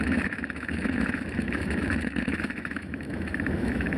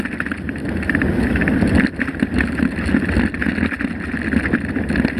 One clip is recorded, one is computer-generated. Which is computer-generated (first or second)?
first